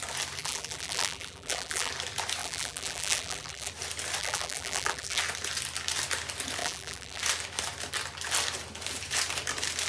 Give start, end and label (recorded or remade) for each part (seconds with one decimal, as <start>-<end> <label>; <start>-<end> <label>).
0.0-0.4 recorded; 0.4-1.9 remade; 1.9-2.4 recorded; 2.4-3.7 remade; 3.7-4.2 recorded; 4.2-5.2 remade; 5.2-6.6 recorded; 6.6-7.2 remade; 7.2-9.9 recorded